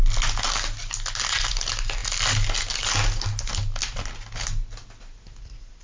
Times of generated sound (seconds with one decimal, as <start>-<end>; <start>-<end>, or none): none